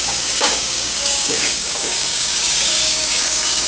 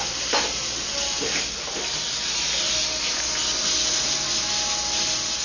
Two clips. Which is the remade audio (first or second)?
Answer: first